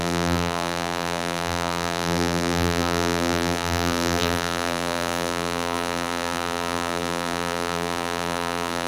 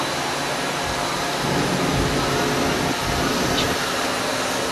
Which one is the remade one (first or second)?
first